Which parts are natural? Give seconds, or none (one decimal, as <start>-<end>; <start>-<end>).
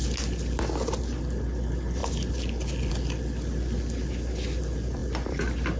0.0-5.8